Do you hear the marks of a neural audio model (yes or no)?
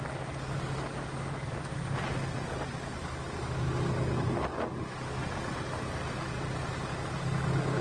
no